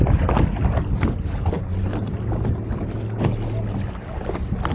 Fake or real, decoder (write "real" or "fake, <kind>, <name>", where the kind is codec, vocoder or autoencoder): real